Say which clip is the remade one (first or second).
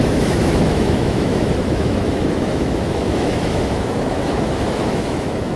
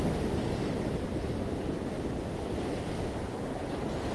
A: first